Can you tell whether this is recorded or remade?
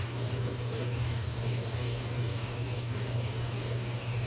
remade